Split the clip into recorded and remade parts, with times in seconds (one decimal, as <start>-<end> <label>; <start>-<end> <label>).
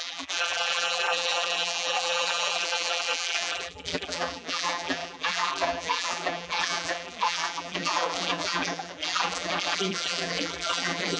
0.0-11.2 remade